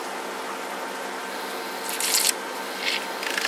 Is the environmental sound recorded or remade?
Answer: recorded